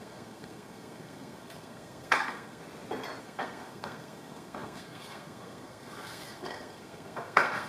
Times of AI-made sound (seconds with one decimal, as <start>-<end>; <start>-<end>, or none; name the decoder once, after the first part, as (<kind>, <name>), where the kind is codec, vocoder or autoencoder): 0.0-2.6 (codec, SNAC); 3.2-7.7